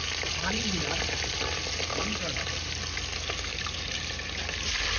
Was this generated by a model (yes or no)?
no